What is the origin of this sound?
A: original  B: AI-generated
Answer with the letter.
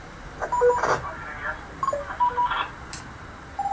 A